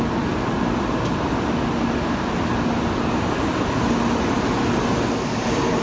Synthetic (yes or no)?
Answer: no